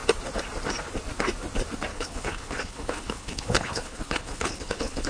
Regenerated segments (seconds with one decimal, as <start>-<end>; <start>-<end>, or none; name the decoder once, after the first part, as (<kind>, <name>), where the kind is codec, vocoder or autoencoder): 1.9-5.1 (codec, HILCodec)